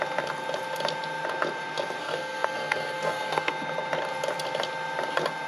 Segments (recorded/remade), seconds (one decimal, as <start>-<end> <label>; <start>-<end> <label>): 0.0-2.0 recorded; 2.0-3.5 remade; 3.5-5.5 recorded